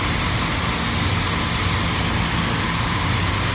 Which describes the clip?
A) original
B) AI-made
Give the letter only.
A